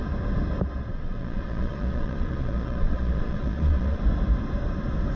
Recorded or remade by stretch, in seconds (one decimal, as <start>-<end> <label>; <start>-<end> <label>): 0.0-0.9 recorded; 0.9-4.0 remade; 4.0-5.2 recorded